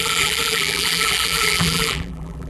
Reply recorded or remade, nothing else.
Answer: remade